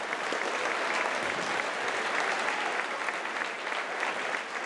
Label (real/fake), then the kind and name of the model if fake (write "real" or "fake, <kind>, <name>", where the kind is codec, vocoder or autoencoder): real